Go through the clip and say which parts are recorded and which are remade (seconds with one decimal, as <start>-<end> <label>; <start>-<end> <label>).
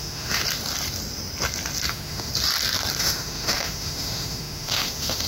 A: 0.0-0.4 remade; 0.4-1.9 recorded; 1.9-2.3 remade; 2.3-3.0 recorded; 3.0-5.3 remade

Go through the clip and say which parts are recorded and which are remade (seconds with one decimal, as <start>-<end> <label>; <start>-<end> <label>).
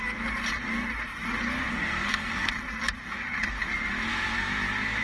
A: 0.0-1.7 recorded; 1.7-2.5 remade; 2.5-5.0 recorded